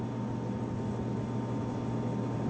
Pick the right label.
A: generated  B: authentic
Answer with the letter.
B